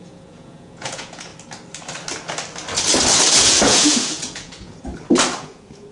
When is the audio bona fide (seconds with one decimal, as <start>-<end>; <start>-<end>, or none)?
1.3-3.4; 4.9-5.4